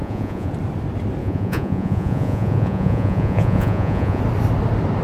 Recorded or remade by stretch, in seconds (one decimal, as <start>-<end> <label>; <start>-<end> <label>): 0.0-0.5 remade; 0.5-1.2 recorded; 1.2-4.2 remade; 4.2-5.0 recorded